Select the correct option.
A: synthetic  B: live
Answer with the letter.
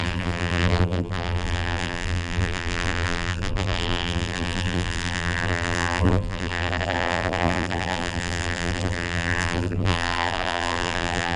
A